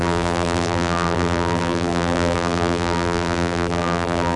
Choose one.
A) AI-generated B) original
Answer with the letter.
A